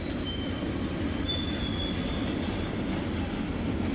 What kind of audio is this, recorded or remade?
recorded